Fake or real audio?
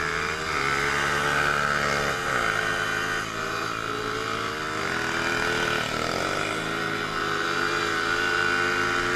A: real